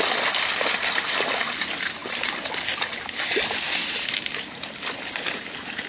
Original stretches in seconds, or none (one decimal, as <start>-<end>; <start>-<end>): 0.0-5.9